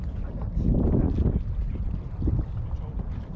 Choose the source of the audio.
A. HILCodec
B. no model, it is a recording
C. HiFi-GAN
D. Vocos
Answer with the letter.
B